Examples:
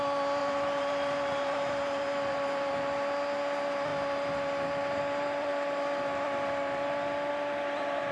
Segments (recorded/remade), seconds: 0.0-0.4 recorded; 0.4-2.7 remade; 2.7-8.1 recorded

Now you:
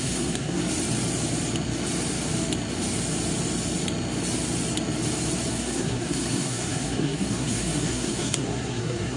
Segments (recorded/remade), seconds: 0.0-0.6 remade; 0.6-5.5 recorded; 5.5-9.2 remade

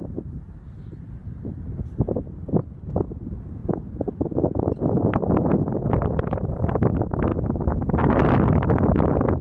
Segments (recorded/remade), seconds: 0.0-3.6 recorded; 3.6-4.8 remade; 4.8-9.4 recorded